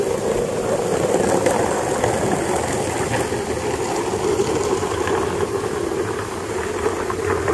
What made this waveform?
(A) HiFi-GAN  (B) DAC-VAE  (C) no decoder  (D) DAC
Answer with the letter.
C